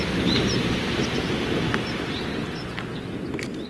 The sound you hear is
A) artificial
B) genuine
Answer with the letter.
B